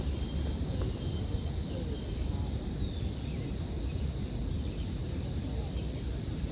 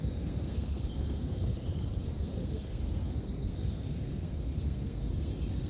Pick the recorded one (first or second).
first